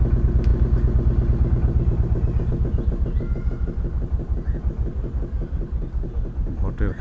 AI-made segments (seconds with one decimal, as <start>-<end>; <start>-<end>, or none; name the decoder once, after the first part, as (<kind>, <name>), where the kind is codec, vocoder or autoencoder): none